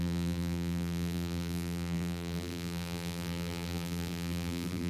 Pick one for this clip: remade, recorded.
remade